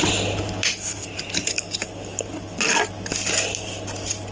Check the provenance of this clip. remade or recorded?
recorded